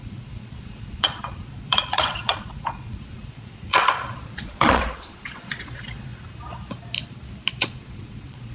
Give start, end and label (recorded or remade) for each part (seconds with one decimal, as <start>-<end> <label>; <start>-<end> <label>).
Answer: 0.0-6.1 remade; 6.1-7.6 recorded; 7.6-8.5 remade